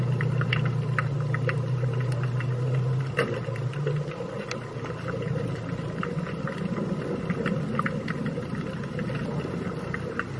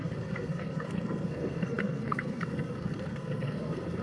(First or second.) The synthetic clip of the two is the second